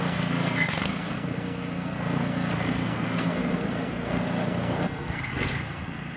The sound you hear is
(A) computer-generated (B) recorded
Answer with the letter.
A